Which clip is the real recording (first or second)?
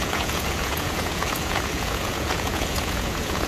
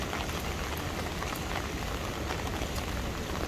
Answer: second